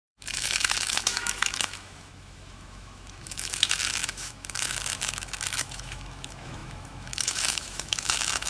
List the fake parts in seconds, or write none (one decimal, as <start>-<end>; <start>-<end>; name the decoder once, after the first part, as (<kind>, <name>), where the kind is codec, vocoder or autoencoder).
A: 0.0-8.5 (autoencoder, DAC-VAE)